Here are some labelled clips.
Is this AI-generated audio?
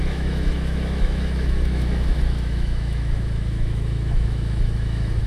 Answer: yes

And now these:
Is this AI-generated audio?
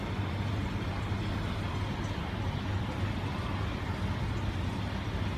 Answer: no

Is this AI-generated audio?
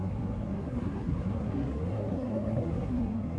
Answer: yes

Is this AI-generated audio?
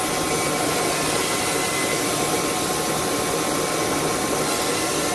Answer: no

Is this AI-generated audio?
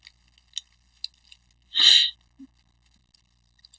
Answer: no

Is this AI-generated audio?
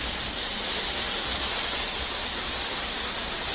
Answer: no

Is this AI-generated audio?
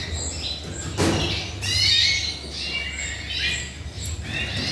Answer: no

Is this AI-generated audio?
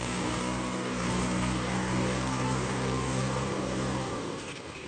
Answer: yes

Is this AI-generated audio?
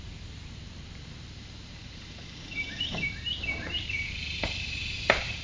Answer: yes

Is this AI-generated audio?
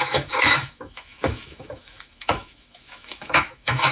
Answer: yes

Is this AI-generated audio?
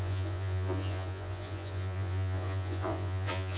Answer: yes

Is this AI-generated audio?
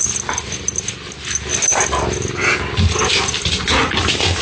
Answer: no